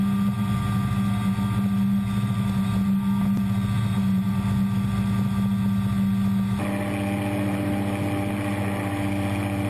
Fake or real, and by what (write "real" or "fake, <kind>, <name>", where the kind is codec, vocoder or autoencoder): real